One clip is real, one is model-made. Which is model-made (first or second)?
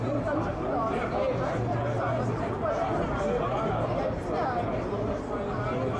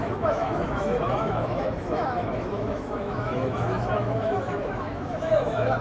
second